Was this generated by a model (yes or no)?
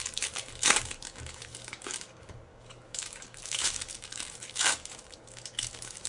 yes